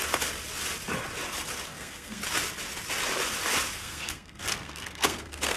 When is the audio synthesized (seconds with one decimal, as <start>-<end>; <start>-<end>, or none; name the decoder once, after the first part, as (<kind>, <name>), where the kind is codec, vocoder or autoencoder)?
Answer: 1.7-2.2 (codec, SNAC); 3.8-5.6